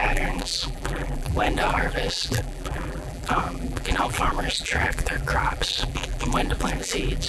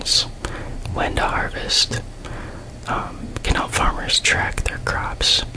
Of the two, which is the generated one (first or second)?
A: first